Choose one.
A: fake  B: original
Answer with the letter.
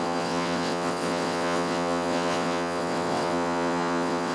A